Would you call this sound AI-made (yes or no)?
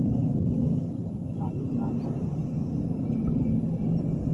no